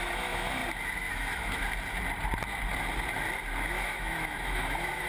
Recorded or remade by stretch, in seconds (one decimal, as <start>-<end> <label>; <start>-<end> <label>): 0.0-0.6 remade; 0.6-1.1 recorded; 1.1-1.6 remade; 1.6-3.7 recorded; 3.7-5.1 remade